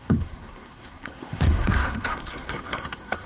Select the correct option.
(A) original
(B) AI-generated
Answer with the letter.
B